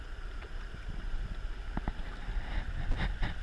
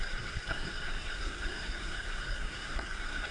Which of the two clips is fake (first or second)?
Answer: second